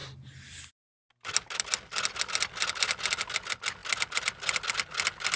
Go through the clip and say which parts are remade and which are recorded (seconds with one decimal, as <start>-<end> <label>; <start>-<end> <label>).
0.0-5.4 recorded